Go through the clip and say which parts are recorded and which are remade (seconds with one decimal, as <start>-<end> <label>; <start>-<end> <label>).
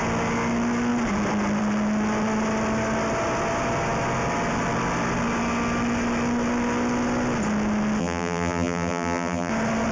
0.0-8.0 recorded; 8.0-9.5 remade; 9.5-9.9 recorded